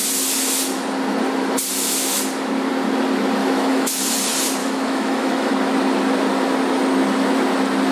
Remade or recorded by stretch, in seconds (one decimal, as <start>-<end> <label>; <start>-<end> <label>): 0.0-3.4 recorded; 3.4-4.0 remade; 4.0-4.6 recorded; 4.6-5.5 remade; 5.5-7.9 recorded